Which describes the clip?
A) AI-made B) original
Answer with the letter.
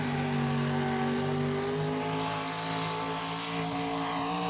B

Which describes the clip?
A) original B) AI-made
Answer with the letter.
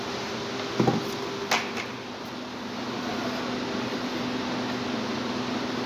A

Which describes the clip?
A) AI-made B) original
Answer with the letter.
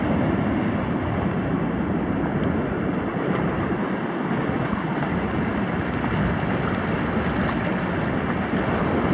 B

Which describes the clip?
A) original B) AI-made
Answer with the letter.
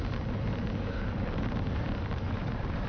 A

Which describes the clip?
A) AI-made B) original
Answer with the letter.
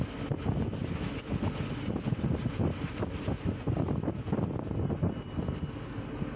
B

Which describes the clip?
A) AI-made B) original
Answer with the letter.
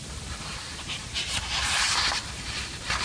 A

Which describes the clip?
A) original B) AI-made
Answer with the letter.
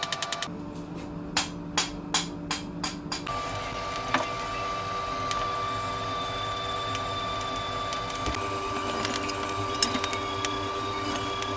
A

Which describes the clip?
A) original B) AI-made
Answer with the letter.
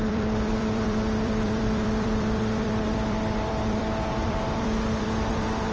B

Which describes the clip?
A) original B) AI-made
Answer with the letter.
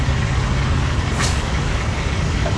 B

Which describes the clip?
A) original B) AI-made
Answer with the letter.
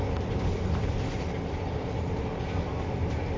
B